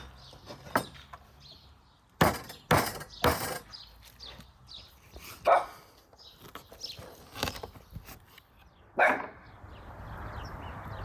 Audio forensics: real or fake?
real